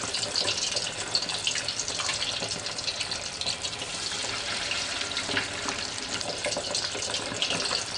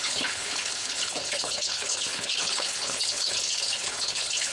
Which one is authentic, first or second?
first